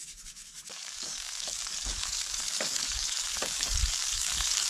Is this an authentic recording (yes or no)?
no